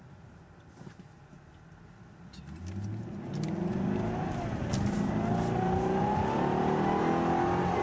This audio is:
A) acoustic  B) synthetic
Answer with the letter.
A